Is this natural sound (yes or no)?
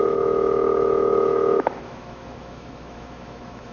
no